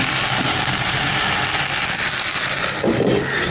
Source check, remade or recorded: remade